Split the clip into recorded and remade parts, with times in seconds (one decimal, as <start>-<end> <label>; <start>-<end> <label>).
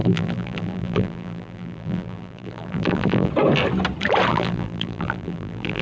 0.0-3.3 remade; 3.3-4.3 recorded; 4.3-5.8 remade